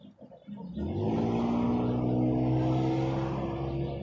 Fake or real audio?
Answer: real